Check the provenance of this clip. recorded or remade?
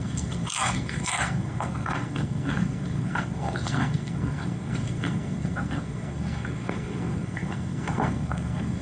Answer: remade